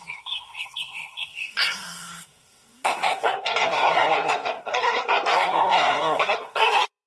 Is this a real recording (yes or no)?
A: no